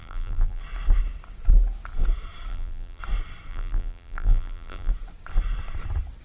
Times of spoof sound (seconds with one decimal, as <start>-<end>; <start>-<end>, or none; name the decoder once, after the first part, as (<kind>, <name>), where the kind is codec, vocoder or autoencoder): 0.0-0.6 (vocoder, BigVGAN v2); 2.5-3.0; 3.5-4.9